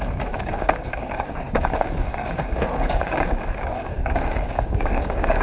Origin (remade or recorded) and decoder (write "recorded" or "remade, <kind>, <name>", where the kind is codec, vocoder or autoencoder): remade, codec, DAC